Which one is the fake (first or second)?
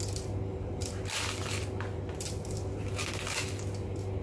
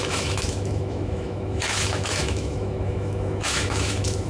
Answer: second